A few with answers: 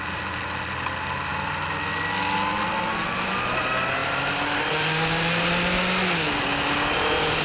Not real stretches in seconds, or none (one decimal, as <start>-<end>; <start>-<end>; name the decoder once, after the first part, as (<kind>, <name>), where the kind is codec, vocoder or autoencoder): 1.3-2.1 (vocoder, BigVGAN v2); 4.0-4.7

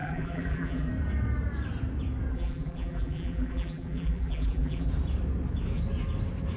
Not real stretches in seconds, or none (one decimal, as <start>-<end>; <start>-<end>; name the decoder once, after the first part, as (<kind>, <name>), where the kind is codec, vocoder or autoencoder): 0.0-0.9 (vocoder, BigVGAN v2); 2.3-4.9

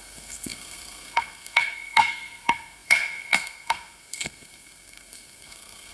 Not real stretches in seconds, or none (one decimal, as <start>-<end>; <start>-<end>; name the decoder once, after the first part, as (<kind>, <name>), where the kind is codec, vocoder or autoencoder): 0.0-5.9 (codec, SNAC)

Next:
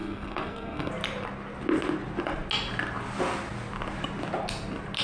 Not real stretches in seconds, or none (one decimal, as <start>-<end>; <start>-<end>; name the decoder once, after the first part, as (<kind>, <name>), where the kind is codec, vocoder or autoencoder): 0.0-0.9 (codec, SNAC)

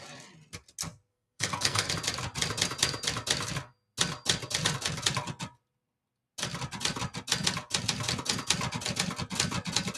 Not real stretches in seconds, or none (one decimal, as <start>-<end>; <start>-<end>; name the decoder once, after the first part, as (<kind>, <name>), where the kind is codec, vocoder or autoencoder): 1.1-1.9 (codec, SNAC)

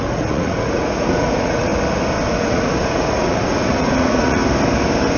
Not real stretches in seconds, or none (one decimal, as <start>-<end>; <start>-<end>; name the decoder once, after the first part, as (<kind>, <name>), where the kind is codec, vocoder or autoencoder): 0.0-1.7 (vocoder, Vocos); 2.3-4.4